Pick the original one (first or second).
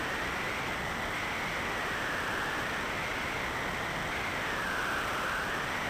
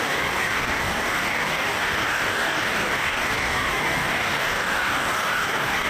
first